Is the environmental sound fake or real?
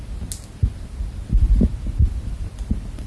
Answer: real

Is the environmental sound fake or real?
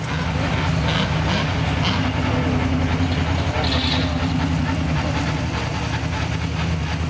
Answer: real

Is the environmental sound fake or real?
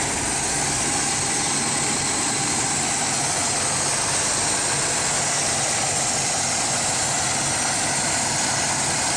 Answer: real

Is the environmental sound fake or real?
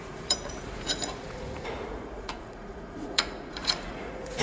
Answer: fake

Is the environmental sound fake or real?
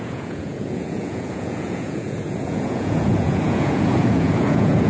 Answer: fake